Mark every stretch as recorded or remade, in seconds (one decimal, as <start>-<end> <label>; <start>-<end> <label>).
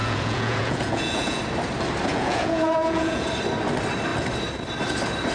0.0-1.4 remade; 1.4-2.1 recorded; 2.1-3.3 remade; 3.3-5.3 recorded